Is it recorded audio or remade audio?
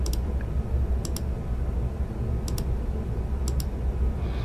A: recorded